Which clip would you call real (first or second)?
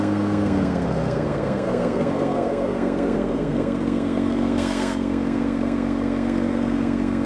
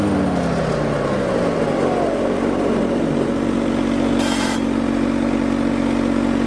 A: second